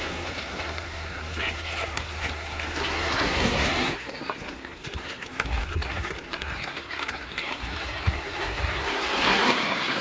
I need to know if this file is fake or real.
fake